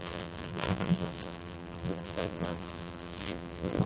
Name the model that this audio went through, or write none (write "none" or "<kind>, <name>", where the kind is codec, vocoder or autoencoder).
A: vocoder, BigVGAN v2